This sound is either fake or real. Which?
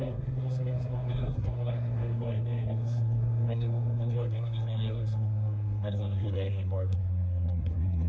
fake